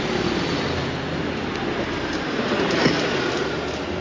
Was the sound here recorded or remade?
recorded